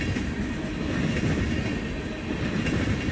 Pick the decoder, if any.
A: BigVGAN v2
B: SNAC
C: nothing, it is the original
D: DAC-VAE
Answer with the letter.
C